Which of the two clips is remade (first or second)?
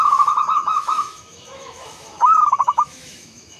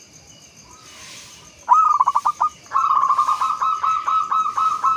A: first